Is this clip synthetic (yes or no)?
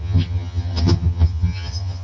yes